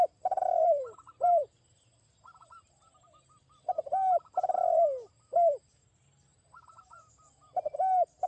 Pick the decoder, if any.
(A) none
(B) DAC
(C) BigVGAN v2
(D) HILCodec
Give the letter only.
C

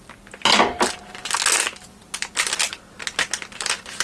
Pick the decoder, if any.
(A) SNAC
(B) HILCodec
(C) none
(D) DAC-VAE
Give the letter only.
C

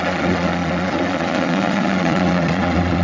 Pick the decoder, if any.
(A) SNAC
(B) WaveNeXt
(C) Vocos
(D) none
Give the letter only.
C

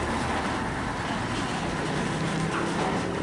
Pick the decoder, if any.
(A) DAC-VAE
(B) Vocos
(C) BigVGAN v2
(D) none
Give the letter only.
D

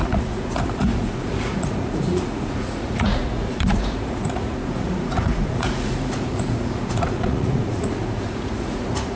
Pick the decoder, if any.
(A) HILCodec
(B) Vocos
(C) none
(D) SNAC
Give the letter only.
B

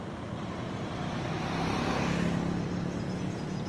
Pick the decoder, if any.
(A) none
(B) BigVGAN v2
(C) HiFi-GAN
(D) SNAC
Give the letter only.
A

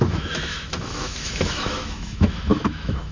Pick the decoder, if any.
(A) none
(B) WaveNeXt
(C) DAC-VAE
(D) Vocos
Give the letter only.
C